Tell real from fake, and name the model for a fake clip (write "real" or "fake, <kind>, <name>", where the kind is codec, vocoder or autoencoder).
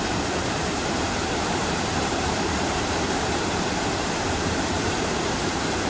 fake, vocoder, BigVGAN v2